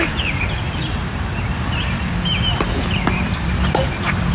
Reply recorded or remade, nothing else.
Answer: remade